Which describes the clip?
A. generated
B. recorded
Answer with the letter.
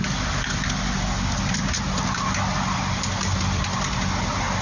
B